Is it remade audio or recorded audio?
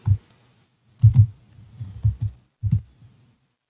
recorded